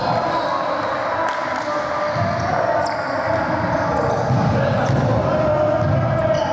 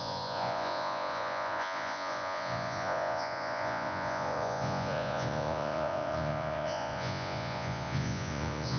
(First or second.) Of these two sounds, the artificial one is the second